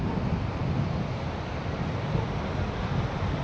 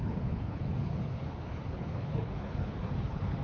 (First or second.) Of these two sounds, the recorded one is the first